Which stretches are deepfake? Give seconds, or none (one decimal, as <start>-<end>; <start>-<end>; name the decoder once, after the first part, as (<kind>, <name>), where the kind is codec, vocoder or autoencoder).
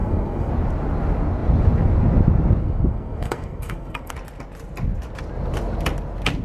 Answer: 0.0-0.5 (codec, SNAC); 2.6-4.1